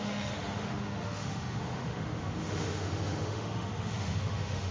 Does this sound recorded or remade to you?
remade